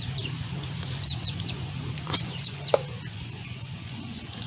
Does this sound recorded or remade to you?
remade